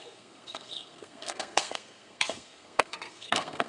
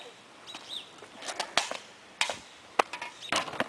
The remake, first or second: first